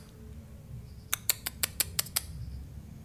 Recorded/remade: recorded